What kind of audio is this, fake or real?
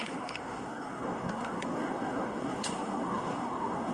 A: fake